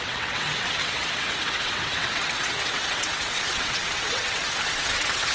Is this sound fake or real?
fake